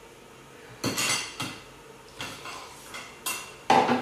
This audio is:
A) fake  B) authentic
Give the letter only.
B